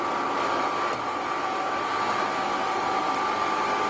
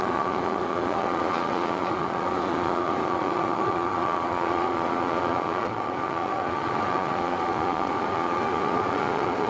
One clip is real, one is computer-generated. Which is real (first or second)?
first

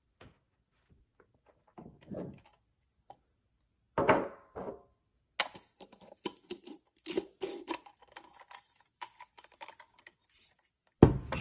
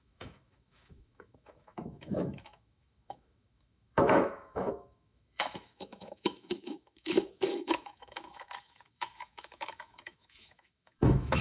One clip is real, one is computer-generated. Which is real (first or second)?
first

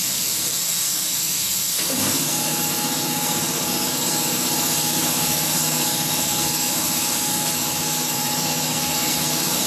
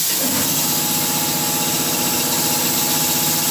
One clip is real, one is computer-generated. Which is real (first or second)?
second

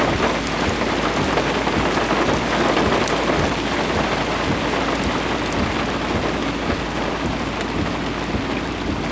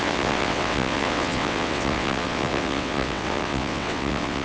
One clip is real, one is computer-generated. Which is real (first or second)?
first